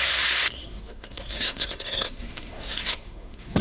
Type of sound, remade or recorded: remade